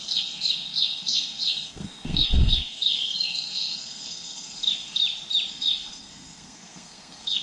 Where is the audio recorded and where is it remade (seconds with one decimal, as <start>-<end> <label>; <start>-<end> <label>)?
0.0-5.0 remade; 5.0-5.5 recorded; 5.5-7.4 remade